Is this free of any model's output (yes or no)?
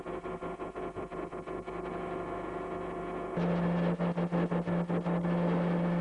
yes